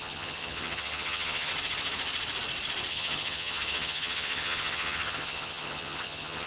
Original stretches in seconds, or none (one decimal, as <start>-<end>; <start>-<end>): 1.5-2.9